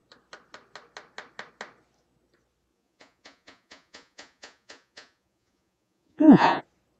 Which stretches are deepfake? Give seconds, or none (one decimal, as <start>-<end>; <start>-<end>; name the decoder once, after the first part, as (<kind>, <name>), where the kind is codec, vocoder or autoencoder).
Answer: 2.7-6.6 (vocoder, Vocos)